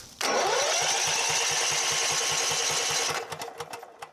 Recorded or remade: recorded